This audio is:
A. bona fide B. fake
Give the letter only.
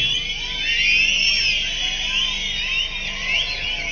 A